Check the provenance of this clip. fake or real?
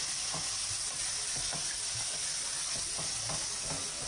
real